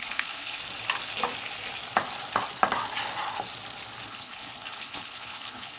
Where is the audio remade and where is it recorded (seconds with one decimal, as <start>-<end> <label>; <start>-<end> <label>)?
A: 0.0-0.6 remade; 0.6-4.1 recorded; 4.1-5.8 remade